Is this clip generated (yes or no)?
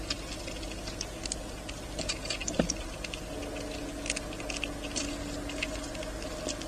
no